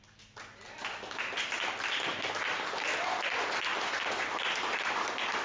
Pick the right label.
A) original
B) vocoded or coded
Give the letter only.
A